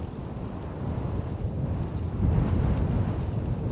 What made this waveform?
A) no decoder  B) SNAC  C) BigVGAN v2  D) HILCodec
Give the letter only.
A